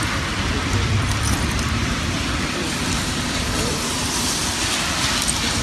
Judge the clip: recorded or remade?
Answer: remade